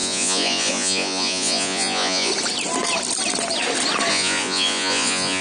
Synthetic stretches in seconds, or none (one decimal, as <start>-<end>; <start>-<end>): 0.0-2.3; 4.1-5.4

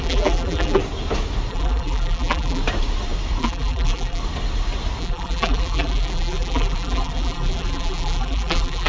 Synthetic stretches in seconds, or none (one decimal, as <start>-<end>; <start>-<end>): 0.0-0.8; 1.5-2.6; 3.4-4.2; 5.0-8.9